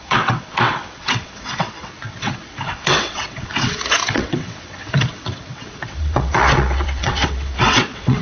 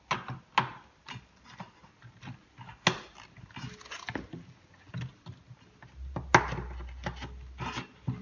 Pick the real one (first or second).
second